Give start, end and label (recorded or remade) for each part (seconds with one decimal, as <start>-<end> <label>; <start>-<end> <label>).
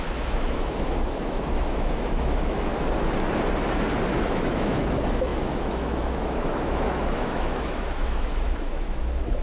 0.0-2.7 remade; 2.7-4.1 recorded; 4.1-9.4 remade